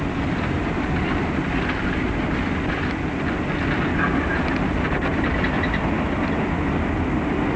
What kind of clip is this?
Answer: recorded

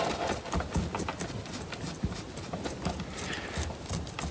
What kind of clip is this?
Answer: recorded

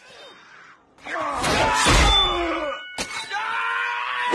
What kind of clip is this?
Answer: recorded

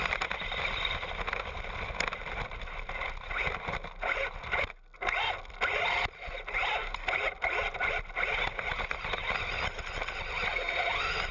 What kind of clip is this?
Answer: recorded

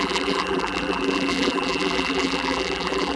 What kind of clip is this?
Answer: remade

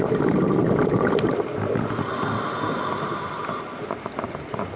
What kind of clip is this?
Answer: recorded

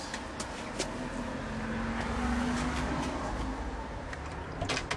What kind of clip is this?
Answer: recorded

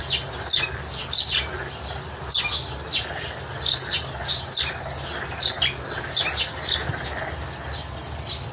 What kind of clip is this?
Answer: recorded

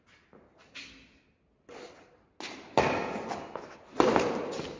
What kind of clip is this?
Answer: recorded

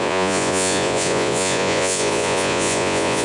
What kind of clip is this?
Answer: remade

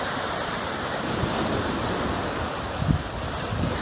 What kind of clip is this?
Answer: recorded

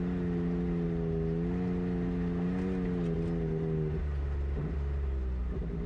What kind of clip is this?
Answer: recorded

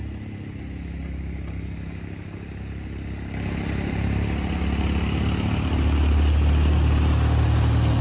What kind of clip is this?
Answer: recorded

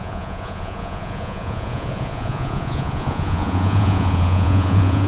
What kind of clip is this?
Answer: remade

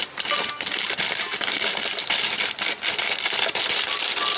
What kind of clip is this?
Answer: recorded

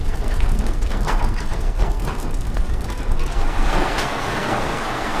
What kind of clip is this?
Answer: remade